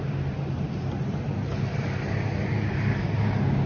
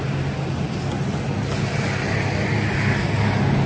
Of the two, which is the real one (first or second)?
second